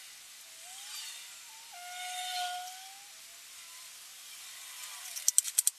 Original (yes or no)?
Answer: yes